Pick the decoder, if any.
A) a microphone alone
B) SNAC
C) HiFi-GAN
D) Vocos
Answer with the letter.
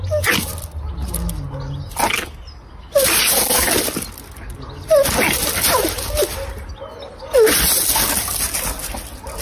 A